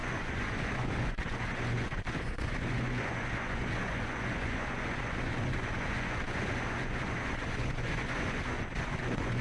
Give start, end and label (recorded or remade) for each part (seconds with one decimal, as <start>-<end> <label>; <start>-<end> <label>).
0.0-9.4 remade

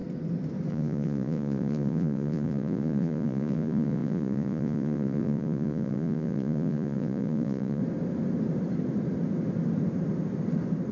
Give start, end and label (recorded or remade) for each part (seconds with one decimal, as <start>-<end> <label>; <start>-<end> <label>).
0.0-0.7 recorded; 0.7-7.8 remade; 7.8-10.9 recorded

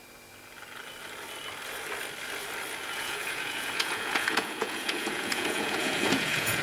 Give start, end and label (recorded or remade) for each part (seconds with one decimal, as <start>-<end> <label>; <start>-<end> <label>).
0.0-2.8 recorded; 2.8-6.6 remade

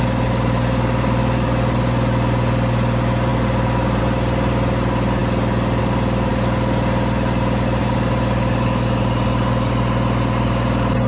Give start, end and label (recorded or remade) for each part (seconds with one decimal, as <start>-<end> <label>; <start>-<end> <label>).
0.0-11.1 recorded

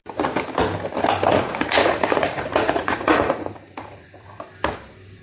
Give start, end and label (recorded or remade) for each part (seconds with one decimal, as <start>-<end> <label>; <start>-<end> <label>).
0.0-1.3 recorded; 1.3-4.4 remade; 4.4-5.2 recorded

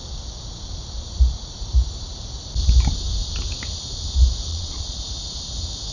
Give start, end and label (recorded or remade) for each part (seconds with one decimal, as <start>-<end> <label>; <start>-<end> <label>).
0.0-4.5 recorded; 4.5-5.0 remade; 5.0-5.9 recorded

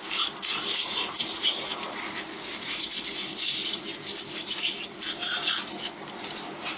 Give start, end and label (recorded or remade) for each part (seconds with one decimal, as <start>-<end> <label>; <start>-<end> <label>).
0.0-6.8 recorded